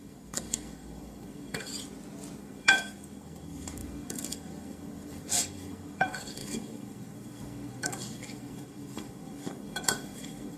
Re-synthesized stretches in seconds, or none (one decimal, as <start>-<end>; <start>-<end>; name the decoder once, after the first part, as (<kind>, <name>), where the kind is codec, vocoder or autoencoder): 0.0-1.7 (codec, SNAC); 2.4-10.6